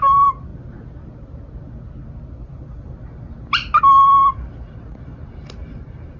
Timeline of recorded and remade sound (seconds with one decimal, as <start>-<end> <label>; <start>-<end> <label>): 0.0-6.2 recorded